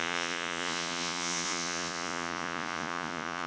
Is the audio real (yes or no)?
no